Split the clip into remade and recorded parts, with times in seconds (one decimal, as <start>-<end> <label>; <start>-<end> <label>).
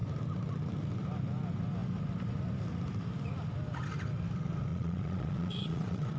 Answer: 0.0-4.7 recorded; 4.7-6.2 remade